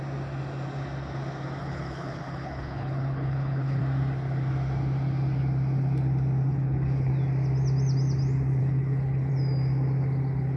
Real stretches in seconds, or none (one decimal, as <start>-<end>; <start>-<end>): 0.0-1.6; 3.8-6.5; 7.1-8.6; 9.3-10.6